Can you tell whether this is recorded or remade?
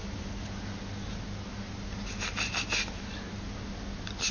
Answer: recorded